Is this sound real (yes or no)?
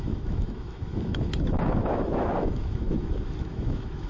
no